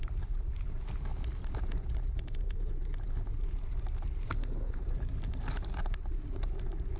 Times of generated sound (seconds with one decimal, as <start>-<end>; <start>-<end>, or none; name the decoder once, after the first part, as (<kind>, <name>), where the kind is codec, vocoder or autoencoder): 0.0-1.1 (vocoder, BigVGAN v2); 4.8-7.0